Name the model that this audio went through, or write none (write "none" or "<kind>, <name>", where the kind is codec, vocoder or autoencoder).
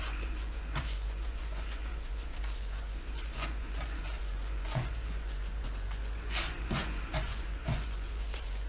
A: vocoder, Vocos